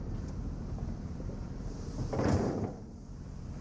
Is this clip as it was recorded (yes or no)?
no